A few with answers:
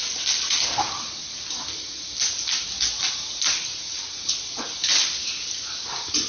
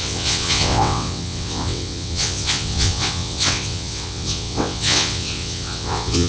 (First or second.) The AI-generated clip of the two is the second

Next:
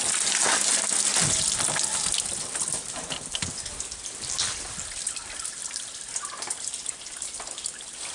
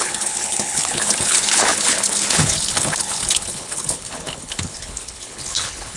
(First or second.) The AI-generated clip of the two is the second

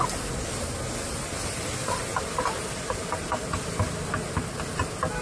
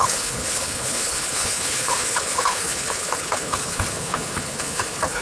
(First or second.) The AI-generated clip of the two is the second